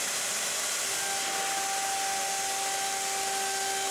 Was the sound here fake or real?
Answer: real